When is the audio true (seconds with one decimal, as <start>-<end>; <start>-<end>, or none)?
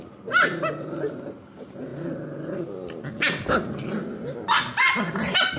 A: 0.0-5.6